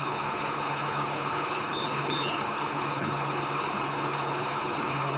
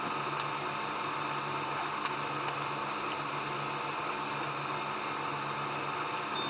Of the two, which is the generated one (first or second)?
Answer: first